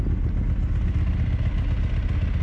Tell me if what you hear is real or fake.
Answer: real